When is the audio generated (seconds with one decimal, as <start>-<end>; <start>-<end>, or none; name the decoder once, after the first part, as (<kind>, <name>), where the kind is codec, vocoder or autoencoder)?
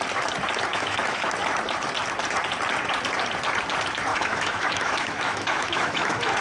0.7-1.3 (autoencoder, DAC-VAE); 4.1-6.4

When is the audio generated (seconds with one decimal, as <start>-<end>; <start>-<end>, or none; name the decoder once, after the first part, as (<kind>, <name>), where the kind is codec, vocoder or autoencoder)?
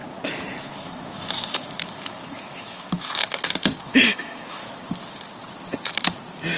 0.6-3.2 (autoencoder, DAC-VAE); 3.8-4.6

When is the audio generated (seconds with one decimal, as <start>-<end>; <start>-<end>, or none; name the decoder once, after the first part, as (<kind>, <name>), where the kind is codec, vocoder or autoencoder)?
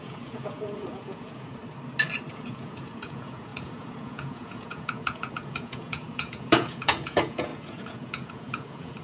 0.0-1.6 (vocoder, Vocos); 2.3-9.0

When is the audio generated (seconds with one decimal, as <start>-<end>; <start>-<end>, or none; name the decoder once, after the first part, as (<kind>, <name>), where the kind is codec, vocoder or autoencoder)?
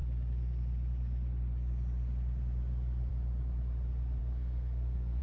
4.2-5.2 (codec, SNAC)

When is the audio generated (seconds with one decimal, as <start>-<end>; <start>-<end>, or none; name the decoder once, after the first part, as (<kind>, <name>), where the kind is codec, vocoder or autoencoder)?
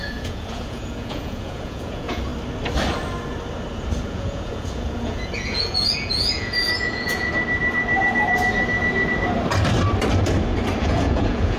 0.0-2.3 (vocoder, Vocos); 4.0-7.3; 10.8-11.6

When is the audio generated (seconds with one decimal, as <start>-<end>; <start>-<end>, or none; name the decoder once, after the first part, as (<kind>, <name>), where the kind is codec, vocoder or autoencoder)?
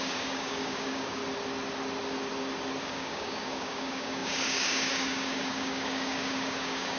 0.0-1.2 (codec, DAC); 2.8-7.0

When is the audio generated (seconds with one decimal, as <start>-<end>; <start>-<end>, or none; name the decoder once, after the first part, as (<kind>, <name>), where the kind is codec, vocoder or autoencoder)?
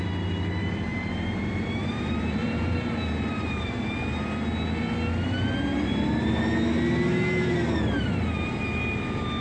0.9-3.7 (vocoder, BigVGAN v2); 5.7-6.4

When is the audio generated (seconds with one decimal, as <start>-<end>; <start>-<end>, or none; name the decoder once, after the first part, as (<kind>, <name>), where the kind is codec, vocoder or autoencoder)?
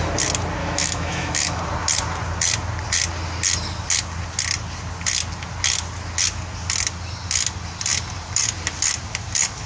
0.6-1.6 (autoencoder, DAC-VAE)